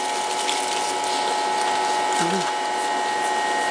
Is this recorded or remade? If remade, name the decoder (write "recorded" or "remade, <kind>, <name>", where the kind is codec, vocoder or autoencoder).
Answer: recorded